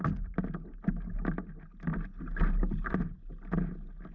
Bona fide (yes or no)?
yes